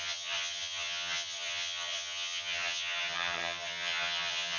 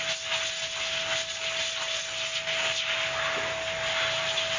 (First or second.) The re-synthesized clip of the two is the first